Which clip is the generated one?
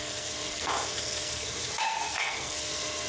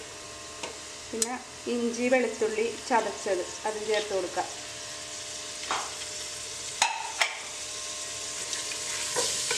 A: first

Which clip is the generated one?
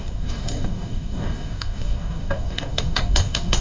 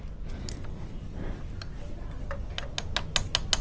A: first